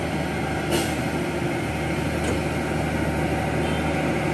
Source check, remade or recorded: recorded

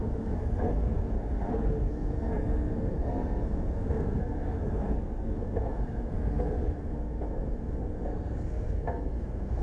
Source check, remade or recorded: remade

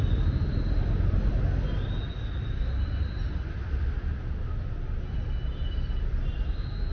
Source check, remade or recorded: recorded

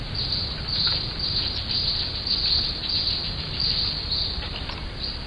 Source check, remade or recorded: recorded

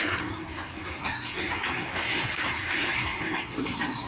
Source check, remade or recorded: remade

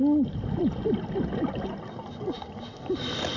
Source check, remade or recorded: recorded